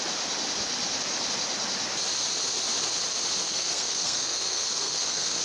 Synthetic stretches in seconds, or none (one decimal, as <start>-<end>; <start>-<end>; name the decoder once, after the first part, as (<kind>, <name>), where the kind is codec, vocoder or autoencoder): 3.4-5.4 (codec, SNAC)